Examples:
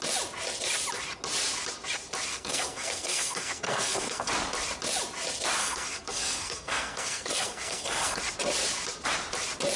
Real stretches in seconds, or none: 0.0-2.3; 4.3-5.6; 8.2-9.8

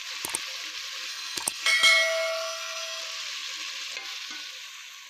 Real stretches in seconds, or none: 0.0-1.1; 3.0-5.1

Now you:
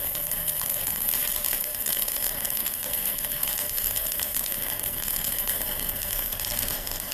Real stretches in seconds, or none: 1.1-1.6